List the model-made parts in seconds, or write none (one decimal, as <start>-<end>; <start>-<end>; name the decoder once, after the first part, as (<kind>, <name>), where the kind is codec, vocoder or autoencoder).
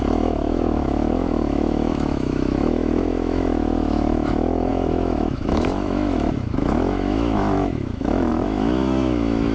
0.0-9.5 (autoencoder, DAC-VAE)